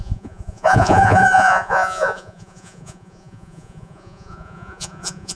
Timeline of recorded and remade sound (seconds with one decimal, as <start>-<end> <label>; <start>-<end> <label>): 0.0-5.4 remade